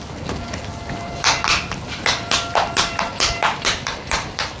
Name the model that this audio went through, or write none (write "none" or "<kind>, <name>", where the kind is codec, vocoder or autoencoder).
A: vocoder, BigVGAN v2